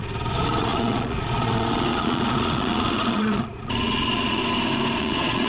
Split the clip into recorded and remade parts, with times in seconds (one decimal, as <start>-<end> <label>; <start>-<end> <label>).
0.0-4.4 remade; 4.4-5.0 recorded; 5.0-5.5 remade